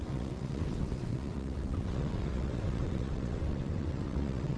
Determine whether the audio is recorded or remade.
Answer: remade